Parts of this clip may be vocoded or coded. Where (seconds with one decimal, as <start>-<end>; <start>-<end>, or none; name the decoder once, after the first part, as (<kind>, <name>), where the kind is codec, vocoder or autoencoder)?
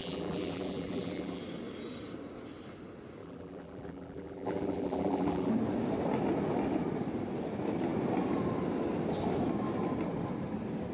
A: 0.0-1.4 (vocoder, BigVGAN v2); 3.2-5.5